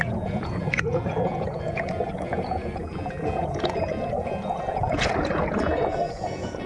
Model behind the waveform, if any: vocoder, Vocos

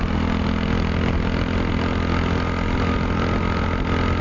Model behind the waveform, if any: none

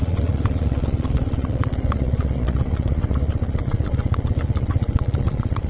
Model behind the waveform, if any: vocoder, Vocos